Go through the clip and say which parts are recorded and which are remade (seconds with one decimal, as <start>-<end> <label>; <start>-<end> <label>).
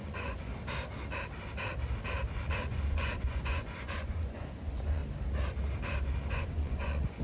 0.0-0.5 remade; 0.5-2.5 recorded; 2.5-5.0 remade; 5.0-6.3 recorded; 6.3-7.2 remade